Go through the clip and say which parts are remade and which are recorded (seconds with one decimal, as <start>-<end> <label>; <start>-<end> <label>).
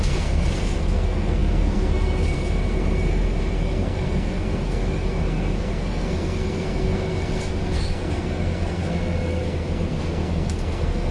0.0-11.1 remade